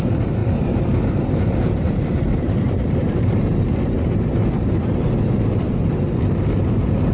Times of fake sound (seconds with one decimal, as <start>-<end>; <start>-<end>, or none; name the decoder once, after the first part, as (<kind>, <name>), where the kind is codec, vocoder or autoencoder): 0.4-4.7 (vocoder, BigVGAN v2)